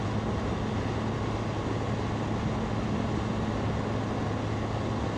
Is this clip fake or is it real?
real